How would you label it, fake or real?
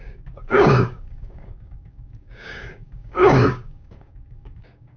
fake